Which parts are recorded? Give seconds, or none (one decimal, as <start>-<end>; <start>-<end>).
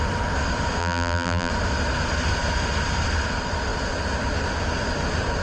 0.0-0.8; 1.5-5.4